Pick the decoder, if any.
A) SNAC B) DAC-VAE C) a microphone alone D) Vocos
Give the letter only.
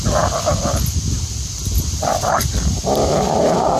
C